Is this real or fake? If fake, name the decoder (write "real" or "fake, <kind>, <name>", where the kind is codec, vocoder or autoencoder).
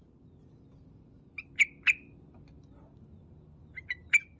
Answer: real